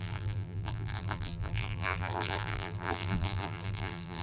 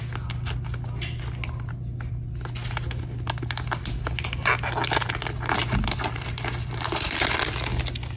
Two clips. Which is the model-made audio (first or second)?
first